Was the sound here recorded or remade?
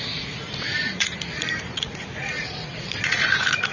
remade